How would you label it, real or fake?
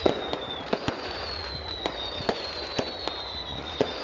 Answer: fake